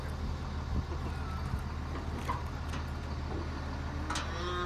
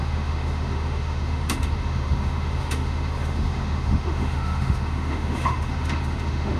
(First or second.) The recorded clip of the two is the first